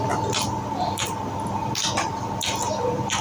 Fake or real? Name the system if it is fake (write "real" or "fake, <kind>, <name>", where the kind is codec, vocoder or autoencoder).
real